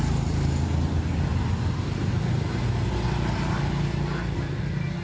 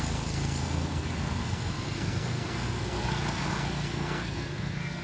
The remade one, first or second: second